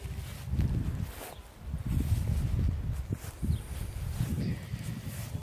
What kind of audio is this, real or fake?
real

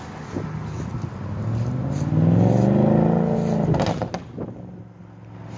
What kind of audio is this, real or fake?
real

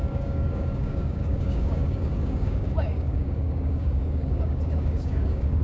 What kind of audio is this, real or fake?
fake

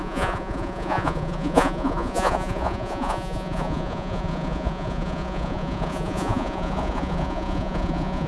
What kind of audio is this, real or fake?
fake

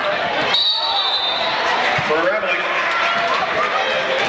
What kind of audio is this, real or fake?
real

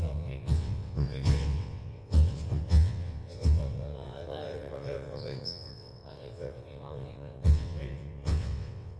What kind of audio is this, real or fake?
fake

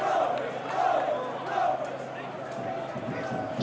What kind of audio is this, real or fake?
real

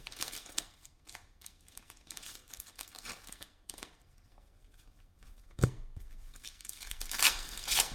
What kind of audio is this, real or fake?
fake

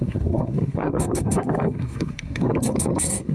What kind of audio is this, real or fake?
fake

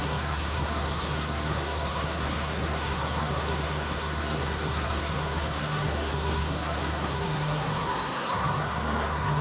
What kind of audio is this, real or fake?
fake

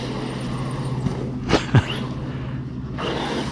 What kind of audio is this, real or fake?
real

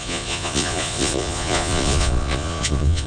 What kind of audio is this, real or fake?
fake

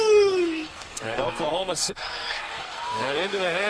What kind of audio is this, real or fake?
fake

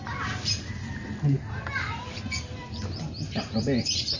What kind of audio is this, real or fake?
real